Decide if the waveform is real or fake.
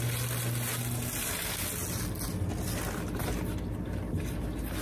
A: real